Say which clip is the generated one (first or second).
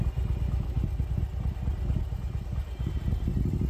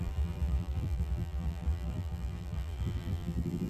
second